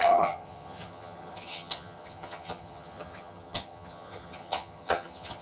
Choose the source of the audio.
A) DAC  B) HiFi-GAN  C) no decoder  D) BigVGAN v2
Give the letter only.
B